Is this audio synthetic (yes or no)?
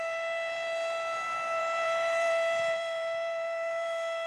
yes